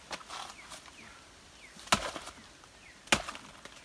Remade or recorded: recorded